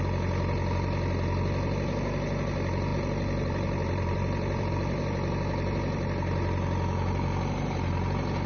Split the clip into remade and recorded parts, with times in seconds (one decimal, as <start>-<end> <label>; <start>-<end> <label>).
0.0-2.9 recorded; 2.9-4.7 remade; 4.7-8.5 recorded